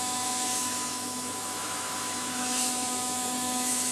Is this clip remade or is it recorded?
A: remade